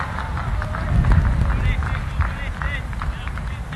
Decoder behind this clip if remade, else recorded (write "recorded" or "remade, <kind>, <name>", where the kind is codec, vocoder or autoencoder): recorded